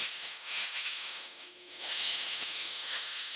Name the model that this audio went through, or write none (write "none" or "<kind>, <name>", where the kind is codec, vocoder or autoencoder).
autoencoder, DAC-VAE